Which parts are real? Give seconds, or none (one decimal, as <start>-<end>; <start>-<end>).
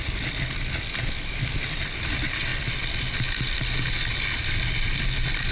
0.0-5.5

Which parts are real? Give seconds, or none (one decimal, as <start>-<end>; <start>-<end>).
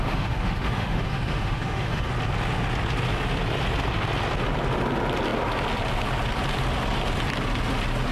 2.1-8.1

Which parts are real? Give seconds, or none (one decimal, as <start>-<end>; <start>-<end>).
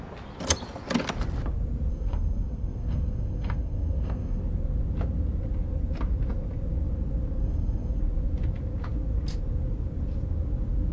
0.0-1.9; 4.4-7.4; 8.0-10.9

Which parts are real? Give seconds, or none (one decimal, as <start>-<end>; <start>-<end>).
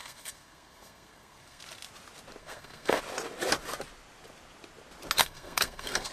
1.6-2.4; 3.0-5.2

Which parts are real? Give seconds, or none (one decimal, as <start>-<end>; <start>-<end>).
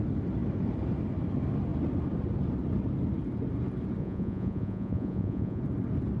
0.0-4.0; 5.6-6.2